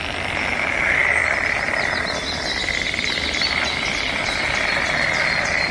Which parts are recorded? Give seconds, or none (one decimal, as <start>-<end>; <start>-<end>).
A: 0.0-5.7